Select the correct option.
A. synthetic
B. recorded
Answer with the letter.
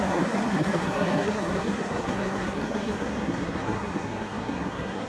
A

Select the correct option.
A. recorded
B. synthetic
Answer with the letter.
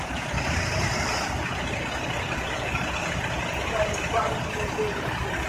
A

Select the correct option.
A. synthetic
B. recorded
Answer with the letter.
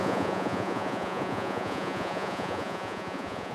A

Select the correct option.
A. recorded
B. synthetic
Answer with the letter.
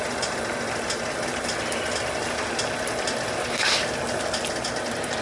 A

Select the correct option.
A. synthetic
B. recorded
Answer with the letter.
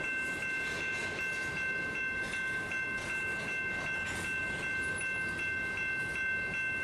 B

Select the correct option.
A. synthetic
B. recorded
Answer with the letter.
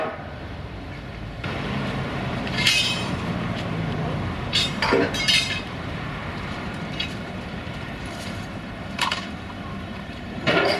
A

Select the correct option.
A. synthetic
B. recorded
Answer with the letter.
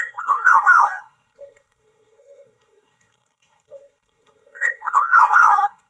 A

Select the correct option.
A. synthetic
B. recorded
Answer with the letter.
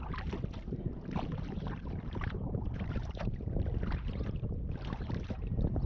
A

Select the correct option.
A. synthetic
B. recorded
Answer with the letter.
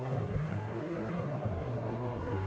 A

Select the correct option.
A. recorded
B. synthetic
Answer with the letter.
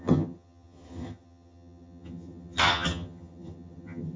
B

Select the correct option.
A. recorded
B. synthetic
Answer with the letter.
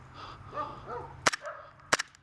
A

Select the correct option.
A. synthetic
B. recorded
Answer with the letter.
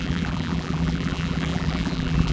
A